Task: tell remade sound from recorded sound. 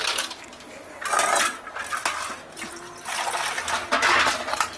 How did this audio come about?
recorded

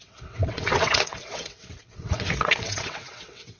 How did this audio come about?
remade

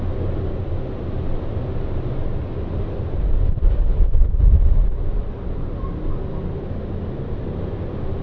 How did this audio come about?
recorded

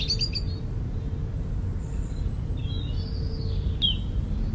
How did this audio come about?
recorded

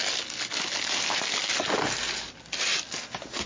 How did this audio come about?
recorded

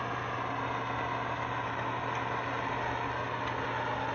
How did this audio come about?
recorded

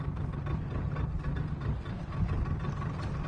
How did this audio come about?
recorded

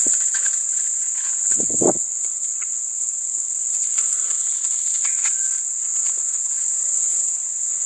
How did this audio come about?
remade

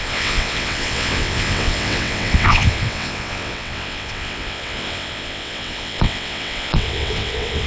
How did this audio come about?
remade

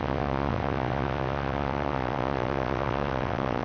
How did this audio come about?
remade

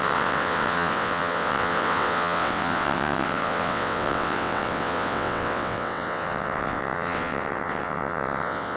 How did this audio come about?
remade